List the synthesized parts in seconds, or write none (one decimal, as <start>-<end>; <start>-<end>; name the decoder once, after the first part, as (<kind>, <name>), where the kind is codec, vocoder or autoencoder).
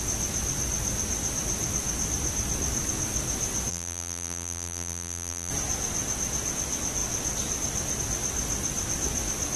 3.7-5.5 (vocoder, BigVGAN v2)